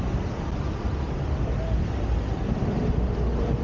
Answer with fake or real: real